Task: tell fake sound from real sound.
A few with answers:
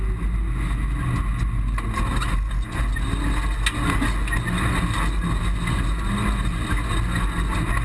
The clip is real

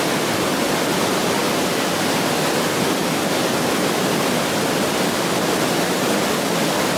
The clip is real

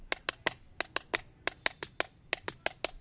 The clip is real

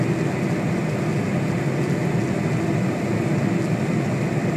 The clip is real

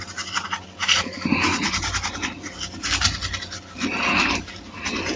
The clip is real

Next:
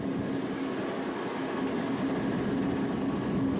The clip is real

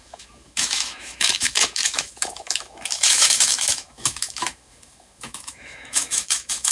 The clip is fake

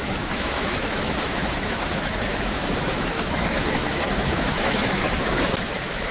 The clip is fake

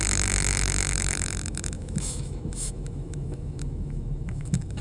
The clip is fake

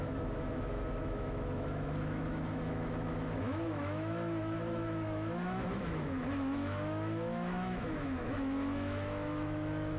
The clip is fake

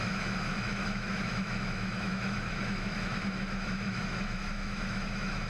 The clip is fake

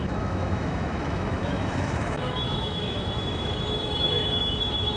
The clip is fake